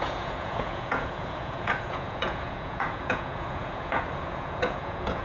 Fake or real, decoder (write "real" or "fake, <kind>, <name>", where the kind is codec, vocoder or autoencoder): fake, vocoder, Vocos